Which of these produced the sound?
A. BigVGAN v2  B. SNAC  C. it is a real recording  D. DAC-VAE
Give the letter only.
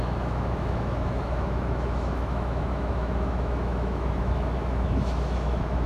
D